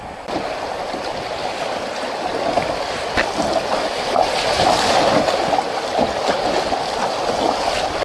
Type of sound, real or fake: real